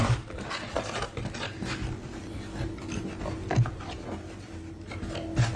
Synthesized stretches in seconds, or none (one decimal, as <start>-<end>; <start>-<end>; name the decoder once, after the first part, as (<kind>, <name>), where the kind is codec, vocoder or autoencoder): 0.0-1.0 (vocoder, BigVGAN v2); 1.8-2.8